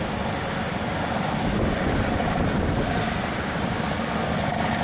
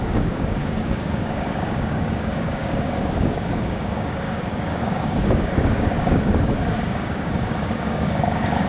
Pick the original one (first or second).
first